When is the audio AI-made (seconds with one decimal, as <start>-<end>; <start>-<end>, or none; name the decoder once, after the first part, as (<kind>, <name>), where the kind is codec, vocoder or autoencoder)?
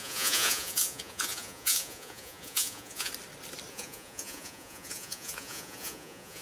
0.0-3.1 (vocoder, Vocos); 3.7-6.4